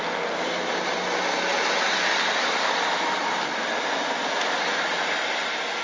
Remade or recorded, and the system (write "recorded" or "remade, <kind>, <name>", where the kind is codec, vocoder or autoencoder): recorded